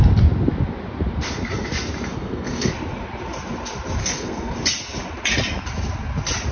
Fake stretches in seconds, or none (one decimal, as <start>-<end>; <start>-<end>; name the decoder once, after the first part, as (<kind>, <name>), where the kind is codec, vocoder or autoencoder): 2.1-2.7 (codec, SNAC); 4.0-4.5